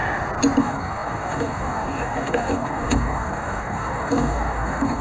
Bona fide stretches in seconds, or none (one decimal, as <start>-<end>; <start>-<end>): 0.0-0.6